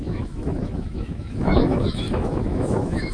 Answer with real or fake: fake